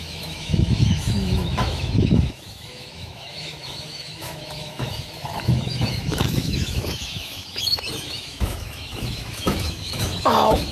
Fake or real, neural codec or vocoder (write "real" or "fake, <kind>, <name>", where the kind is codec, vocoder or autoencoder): fake, autoencoder, DAC-VAE